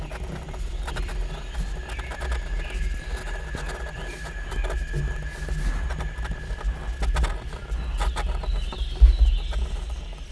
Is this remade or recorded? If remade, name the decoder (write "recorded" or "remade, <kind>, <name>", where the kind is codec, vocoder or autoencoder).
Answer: recorded